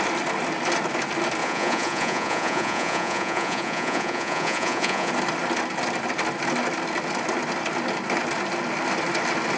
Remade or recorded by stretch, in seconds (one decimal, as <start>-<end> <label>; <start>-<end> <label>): 0.0-1.4 recorded; 1.4-5.1 remade; 5.1-9.6 recorded